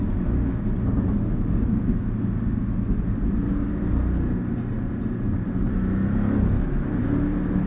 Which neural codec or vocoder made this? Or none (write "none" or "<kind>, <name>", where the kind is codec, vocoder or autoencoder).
none